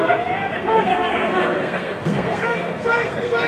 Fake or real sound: fake